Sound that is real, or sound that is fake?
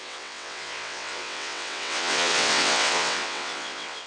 fake